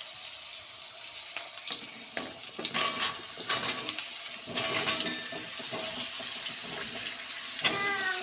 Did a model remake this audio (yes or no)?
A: no